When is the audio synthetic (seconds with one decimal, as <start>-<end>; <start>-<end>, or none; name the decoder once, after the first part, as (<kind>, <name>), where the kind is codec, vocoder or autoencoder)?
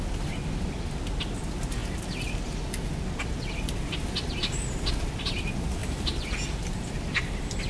5.8-7.7 (vocoder, BigVGAN v2)